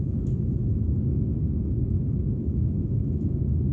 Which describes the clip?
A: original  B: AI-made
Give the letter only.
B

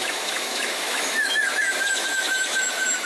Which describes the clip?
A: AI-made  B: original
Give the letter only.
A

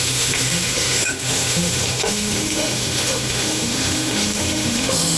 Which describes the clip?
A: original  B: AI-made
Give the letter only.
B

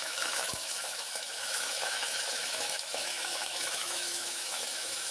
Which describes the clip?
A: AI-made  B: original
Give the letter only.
A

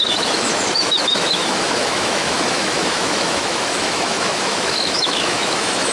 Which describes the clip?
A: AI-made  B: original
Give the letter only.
A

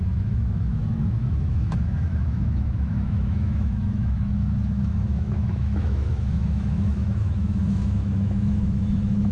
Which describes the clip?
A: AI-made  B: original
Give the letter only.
A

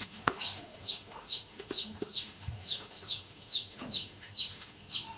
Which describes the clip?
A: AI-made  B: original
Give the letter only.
A